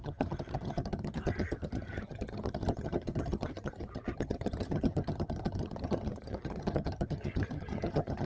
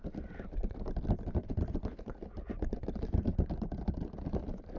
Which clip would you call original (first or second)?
second